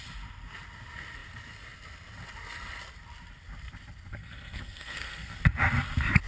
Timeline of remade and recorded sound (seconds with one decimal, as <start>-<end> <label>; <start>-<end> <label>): 0.0-4.1 recorded; 4.1-5.4 remade; 5.4-6.3 recorded